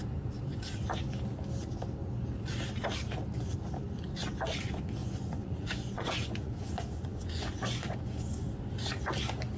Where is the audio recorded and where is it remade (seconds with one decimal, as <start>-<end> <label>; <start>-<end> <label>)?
0.0-5.0 recorded; 5.0-8.5 remade; 8.5-9.6 recorded